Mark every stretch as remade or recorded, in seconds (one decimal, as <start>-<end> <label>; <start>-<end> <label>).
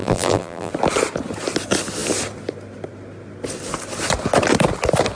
0.0-0.7 remade; 0.7-5.2 recorded